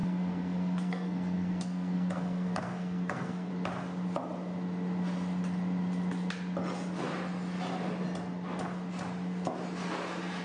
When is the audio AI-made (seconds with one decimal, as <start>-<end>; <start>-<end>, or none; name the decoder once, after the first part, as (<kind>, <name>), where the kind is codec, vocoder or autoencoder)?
0.0-3.5 (codec, SNAC)